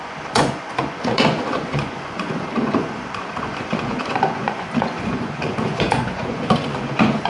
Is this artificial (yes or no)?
yes